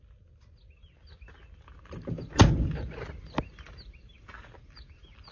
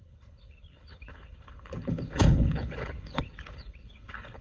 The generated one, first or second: second